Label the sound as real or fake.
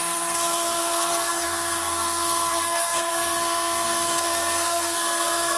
fake